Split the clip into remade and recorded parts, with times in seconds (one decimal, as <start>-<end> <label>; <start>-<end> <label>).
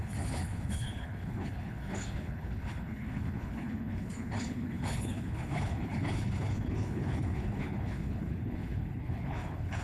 0.0-9.8 remade